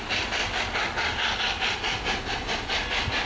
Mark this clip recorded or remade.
recorded